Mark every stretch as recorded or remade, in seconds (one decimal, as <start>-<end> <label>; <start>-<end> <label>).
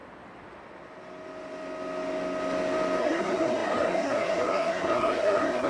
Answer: 0.0-3.0 recorded; 3.0-5.7 remade